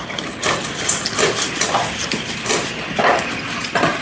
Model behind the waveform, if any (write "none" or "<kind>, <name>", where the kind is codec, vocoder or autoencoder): vocoder, BigVGAN v2